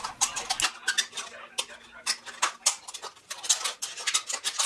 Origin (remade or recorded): recorded